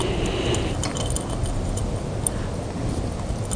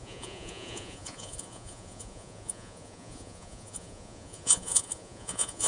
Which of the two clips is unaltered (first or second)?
first